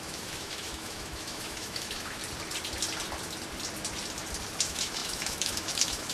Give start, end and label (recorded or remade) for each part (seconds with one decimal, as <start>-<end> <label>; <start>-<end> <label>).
0.0-2.2 remade; 2.2-4.6 recorded; 4.6-6.1 remade